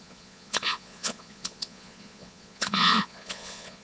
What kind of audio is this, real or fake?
fake